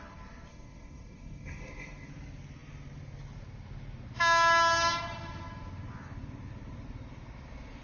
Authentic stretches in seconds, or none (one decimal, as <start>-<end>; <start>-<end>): 0.0-0.5; 2.1-7.8